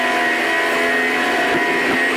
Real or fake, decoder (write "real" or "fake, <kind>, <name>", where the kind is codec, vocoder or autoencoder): real